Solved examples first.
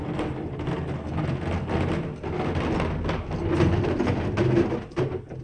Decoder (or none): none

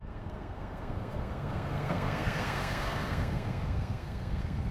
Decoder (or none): codec, SNAC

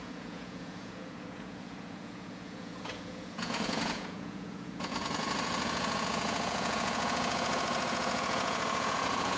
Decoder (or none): vocoder, Vocos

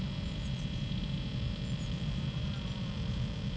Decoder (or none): vocoder, BigVGAN v2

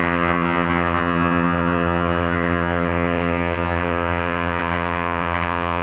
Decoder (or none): vocoder, HiFi-GAN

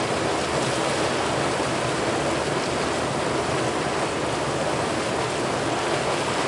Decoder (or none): none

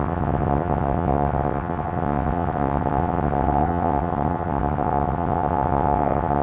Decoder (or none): vocoder, WaveNeXt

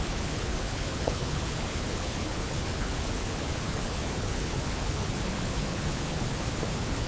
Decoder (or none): codec, HILCodec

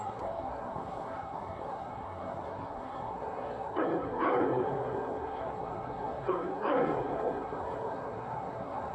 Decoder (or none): codec, SNAC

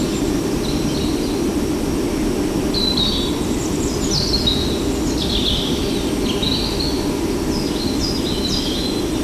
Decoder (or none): none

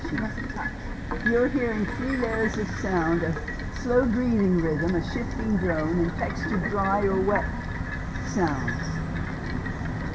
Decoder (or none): none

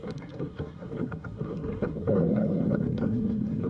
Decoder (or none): codec, SNAC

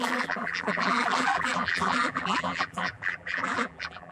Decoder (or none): vocoder, BigVGAN v2